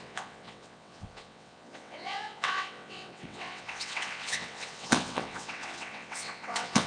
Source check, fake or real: fake